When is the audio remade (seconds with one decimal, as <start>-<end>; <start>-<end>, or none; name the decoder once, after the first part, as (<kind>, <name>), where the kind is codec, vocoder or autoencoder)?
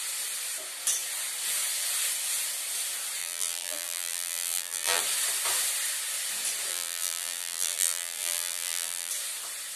3.2-5.0 (vocoder, BigVGAN v2); 6.7-9.1